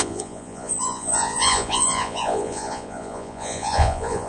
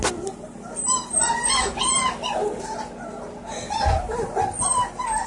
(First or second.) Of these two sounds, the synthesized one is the first